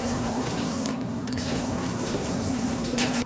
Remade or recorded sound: remade